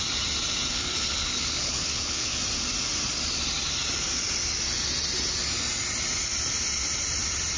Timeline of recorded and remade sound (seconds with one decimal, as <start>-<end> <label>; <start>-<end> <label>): 0.0-0.7 recorded; 0.7-2.4 remade; 2.4-7.6 recorded